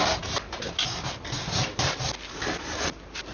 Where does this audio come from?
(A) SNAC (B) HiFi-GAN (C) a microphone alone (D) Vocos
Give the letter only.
C